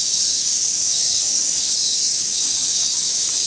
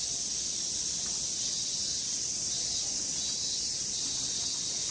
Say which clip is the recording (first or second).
second